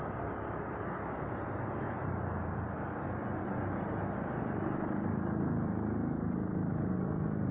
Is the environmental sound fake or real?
real